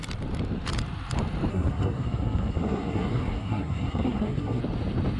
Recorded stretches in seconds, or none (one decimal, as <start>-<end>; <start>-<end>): 0.0-1.5; 4.6-5.2